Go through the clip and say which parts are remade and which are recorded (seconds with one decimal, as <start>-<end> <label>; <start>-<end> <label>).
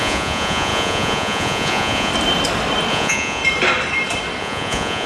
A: 0.0-2.1 remade; 2.1-2.9 recorded; 2.9-3.4 remade; 3.4-4.4 recorded; 4.4-5.1 remade